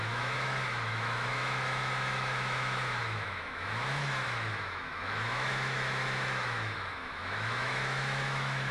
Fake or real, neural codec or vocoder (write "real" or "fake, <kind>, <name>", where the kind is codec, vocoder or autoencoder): fake, autoencoder, DAC-VAE